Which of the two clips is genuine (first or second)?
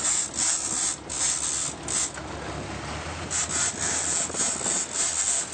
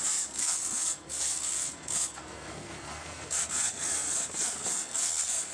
first